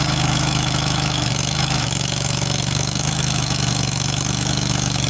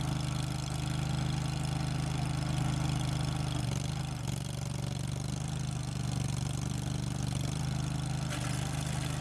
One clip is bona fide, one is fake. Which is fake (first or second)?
first